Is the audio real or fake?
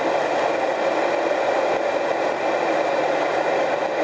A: real